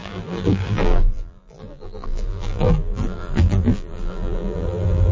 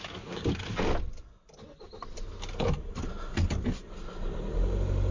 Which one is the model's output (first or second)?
first